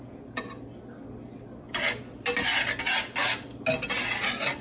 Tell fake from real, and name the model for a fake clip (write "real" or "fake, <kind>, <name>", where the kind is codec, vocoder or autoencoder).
real